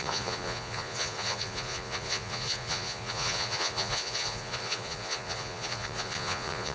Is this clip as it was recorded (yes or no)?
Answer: no